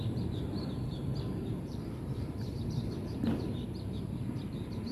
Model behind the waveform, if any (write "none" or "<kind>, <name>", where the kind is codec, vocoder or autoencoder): vocoder, BigVGAN v2